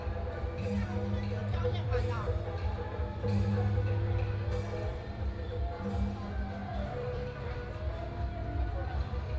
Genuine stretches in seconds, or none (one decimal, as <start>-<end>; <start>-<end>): 0.0-1.4; 2.3-4.9; 5.6-6.6; 8.3-9.4